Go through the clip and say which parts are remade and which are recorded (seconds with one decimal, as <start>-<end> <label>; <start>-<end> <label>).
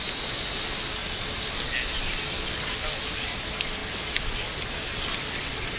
0.0-5.8 recorded